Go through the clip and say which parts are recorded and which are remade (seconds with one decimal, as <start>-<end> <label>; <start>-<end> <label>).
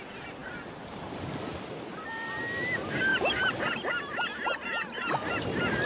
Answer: 0.0-5.9 recorded